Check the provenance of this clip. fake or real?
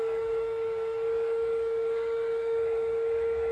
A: fake